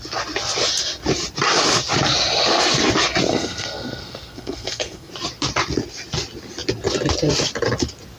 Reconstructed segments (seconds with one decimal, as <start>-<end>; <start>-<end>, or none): 3.3-5.1